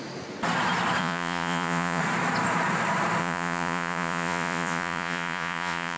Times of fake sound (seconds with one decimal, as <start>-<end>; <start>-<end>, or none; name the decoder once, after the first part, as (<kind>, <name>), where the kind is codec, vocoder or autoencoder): 1.0-2.0 (vocoder, Vocos); 3.2-6.0